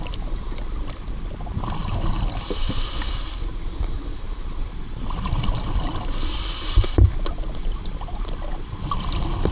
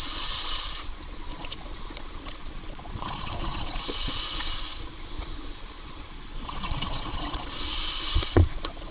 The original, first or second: first